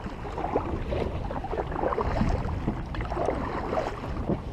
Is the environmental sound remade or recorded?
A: recorded